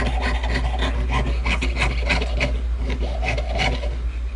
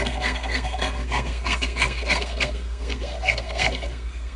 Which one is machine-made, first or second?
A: second